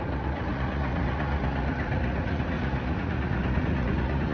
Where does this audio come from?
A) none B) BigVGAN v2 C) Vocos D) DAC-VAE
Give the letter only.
C